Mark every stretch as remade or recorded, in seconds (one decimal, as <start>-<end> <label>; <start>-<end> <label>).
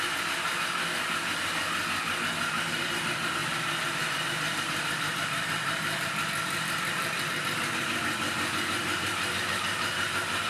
0.0-3.4 recorded; 3.4-8.0 remade; 8.0-10.5 recorded